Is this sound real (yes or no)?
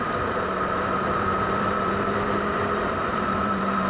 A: no